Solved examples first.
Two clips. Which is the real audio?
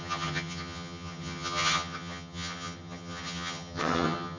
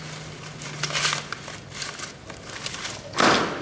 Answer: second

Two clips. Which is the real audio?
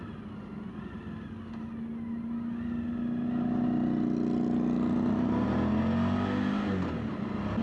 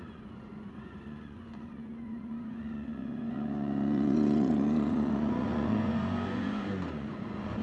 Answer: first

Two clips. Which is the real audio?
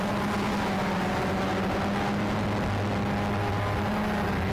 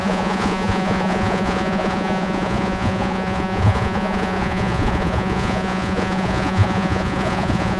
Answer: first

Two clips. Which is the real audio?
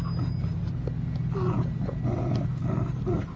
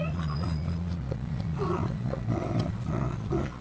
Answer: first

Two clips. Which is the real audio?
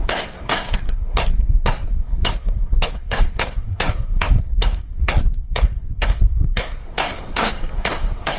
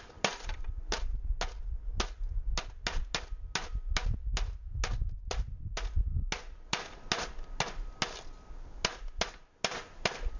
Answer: second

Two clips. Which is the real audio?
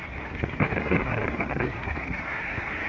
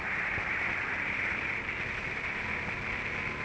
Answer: second